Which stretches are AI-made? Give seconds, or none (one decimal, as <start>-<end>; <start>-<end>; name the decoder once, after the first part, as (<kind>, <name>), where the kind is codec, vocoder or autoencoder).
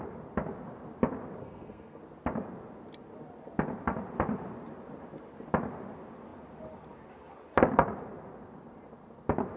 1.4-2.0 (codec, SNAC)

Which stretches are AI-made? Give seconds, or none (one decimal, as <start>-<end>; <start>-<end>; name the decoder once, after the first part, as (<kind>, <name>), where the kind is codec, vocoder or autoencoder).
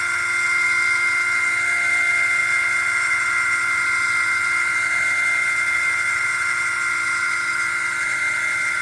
none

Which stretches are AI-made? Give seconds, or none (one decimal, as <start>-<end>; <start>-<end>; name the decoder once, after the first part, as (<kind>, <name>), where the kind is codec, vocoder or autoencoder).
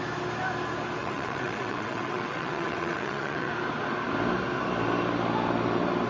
1.0-3.5 (vocoder, WaveNeXt)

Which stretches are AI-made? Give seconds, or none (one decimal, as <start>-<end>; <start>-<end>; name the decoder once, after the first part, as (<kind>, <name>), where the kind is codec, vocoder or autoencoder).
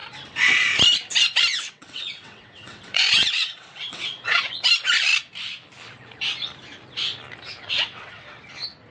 1.5-4.5 (vocoder, WaveNeXt); 7.6-8.4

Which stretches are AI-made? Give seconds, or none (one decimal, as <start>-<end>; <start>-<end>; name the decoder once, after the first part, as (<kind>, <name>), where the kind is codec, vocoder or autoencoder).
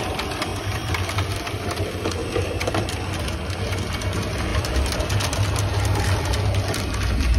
0.5-1.5 (vocoder, BigVGAN v2); 2.2-3.2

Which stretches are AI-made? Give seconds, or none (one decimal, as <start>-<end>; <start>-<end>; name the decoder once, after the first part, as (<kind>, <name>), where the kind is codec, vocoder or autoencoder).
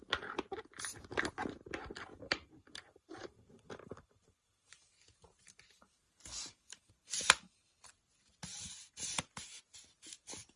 2.1-6.9 (vocoder, BigVGAN v2); 8.5-9.2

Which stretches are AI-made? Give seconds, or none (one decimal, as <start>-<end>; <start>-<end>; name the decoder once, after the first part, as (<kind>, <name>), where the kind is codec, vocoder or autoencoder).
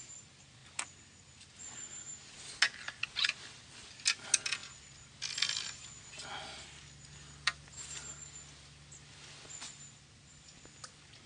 none